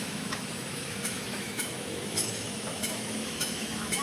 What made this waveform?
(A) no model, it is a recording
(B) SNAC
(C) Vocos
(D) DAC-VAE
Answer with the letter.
D